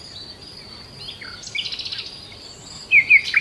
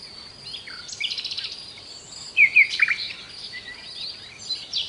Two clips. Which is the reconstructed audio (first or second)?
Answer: second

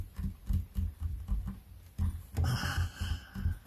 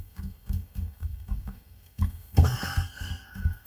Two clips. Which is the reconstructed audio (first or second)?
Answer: second